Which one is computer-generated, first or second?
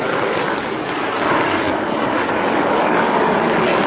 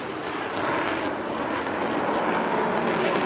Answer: first